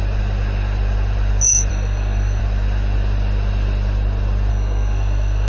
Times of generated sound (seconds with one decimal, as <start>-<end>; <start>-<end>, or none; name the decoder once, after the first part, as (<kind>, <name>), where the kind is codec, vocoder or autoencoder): 1.7-2.4 (codec, SNAC); 4.5-5.5